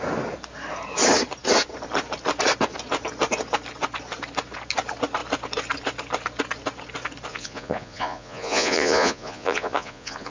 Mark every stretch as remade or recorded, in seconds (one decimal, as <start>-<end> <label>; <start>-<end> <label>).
0.0-7.3 recorded; 7.3-10.3 remade

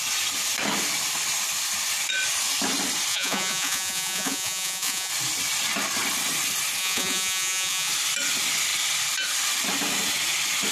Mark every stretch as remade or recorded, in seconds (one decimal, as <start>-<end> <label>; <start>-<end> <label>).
0.0-3.1 recorded; 3.1-5.1 remade; 5.1-6.8 recorded; 6.8-7.9 remade; 7.9-10.7 recorded

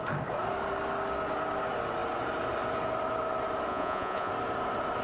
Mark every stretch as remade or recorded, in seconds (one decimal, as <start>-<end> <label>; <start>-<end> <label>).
0.0-3.7 recorded; 3.7-4.3 remade; 4.3-5.0 recorded

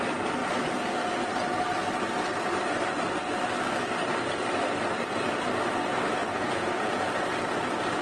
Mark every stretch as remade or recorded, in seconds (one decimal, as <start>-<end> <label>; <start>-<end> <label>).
0.0-6.2 recorded; 6.2-7.2 remade; 7.2-8.0 recorded

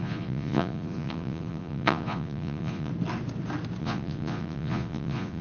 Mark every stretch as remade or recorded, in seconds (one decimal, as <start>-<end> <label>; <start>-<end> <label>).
0.0-2.9 remade; 2.9-3.8 recorded; 3.8-5.4 remade

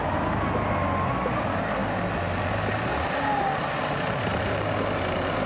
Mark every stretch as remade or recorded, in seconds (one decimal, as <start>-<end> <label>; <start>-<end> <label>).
0.0-5.5 recorded

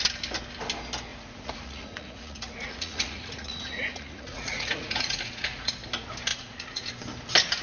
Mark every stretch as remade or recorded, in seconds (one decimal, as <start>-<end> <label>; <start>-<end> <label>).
0.0-1.1 recorded; 1.1-5.7 remade; 5.7-6.3 recorded; 6.3-6.9 remade; 6.9-7.6 recorded